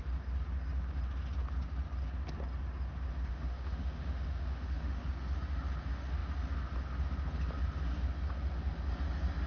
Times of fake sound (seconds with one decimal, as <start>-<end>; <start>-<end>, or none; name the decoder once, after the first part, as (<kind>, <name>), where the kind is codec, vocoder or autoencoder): 3.3-5.1 (autoencoder, DAC-VAE)